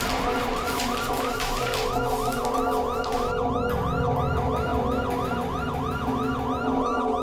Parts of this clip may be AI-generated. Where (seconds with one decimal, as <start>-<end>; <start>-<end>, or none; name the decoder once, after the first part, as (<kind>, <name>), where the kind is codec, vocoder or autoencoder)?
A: none